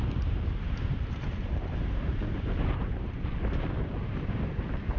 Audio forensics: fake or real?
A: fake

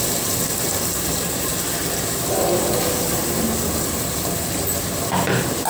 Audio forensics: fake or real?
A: fake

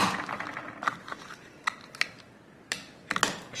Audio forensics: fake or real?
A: real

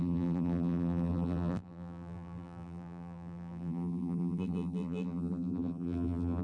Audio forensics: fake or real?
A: fake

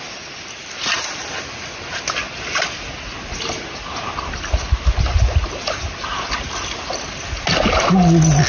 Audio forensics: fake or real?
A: real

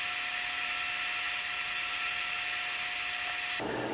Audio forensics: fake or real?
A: real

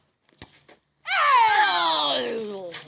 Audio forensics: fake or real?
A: real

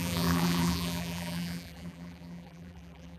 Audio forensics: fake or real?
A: fake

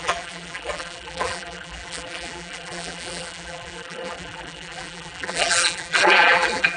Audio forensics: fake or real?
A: fake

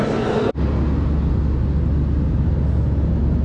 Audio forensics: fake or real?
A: real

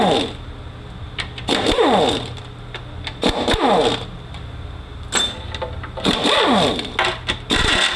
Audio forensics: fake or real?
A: real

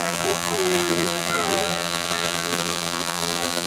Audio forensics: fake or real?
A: fake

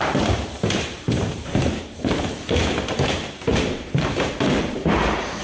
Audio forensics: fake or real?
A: fake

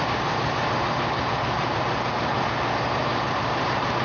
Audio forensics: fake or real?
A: fake